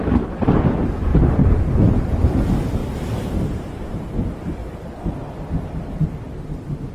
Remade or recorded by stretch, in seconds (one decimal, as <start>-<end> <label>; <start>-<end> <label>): 0.0-1.1 remade; 1.1-2.3 recorded; 2.3-4.6 remade; 4.6-6.9 recorded